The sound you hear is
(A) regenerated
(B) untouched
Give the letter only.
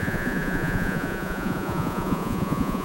A